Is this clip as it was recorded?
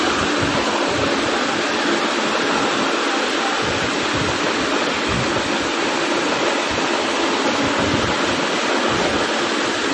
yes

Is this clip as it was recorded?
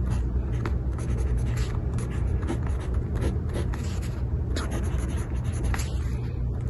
yes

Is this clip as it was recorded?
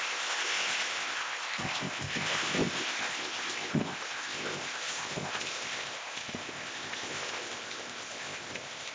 no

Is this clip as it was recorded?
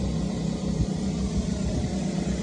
yes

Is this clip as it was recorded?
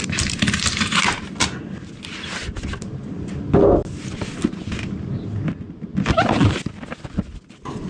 yes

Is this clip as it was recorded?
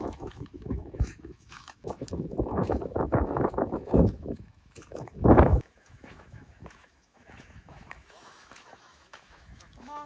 no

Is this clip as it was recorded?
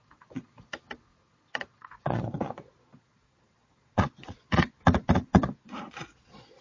no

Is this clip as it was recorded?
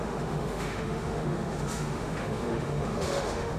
no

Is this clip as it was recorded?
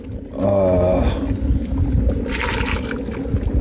yes